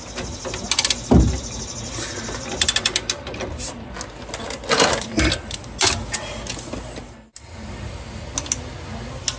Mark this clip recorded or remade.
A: recorded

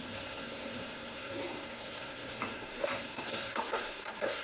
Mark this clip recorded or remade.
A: remade